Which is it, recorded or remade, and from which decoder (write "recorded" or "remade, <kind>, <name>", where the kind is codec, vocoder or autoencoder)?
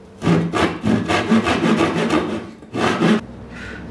recorded